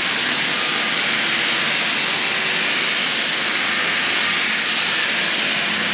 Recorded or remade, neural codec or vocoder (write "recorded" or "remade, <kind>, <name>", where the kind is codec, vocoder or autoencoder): recorded